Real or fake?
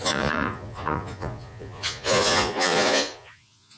fake